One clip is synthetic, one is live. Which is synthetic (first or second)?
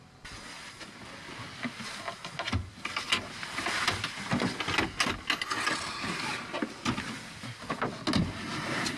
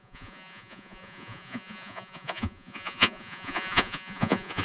second